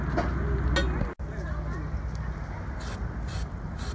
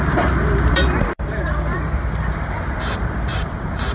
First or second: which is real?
first